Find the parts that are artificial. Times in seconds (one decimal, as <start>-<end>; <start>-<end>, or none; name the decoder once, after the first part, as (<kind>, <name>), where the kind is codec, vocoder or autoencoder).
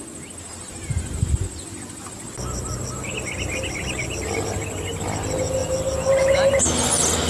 none